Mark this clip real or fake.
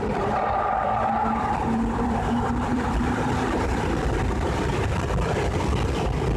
fake